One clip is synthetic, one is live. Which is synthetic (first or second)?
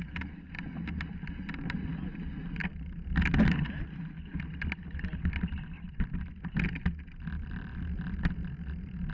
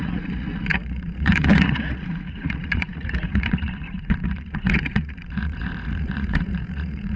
second